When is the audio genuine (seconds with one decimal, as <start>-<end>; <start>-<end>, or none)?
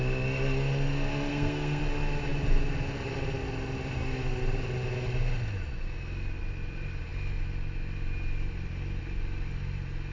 0.0-1.3; 1.8-10.1